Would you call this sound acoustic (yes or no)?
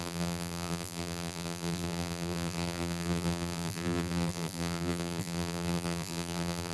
no